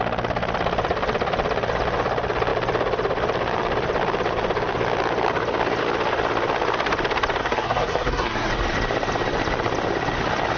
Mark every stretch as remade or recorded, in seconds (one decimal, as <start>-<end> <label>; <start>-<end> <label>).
0.0-7.4 recorded; 7.4-8.5 remade; 8.5-10.6 recorded

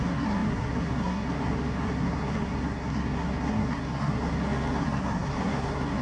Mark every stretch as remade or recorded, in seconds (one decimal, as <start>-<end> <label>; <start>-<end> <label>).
0.0-6.0 remade

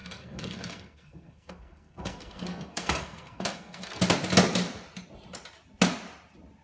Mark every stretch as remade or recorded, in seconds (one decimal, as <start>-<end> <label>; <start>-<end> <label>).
0.0-4.0 remade; 4.0-6.6 recorded

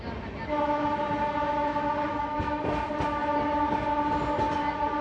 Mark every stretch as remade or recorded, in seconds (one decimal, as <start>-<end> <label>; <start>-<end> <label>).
0.0-2.1 recorded; 2.1-2.6 remade; 2.6-5.0 recorded

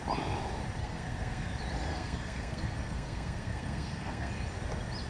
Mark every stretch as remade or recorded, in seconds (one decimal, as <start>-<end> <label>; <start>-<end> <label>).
0.0-0.8 recorded; 0.8-1.5 remade; 1.5-1.9 recorded; 1.9-4.3 remade; 4.3-5.1 recorded

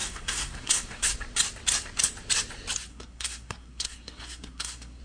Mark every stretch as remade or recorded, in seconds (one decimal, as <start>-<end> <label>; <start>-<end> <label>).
0.0-1.1 remade; 1.1-2.9 recorded; 2.9-5.0 remade

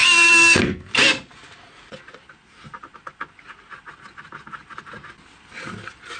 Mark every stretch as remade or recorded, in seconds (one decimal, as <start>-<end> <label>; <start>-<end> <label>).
0.0-0.9 remade; 0.9-6.2 recorded